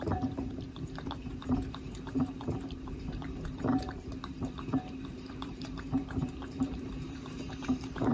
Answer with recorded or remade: remade